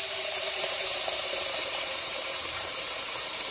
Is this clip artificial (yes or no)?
yes